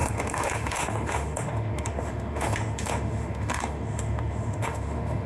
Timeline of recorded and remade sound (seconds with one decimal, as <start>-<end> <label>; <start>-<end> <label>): 0.0-5.3 remade